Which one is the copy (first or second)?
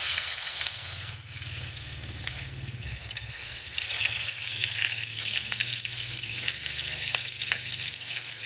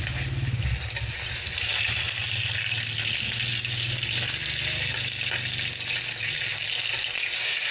first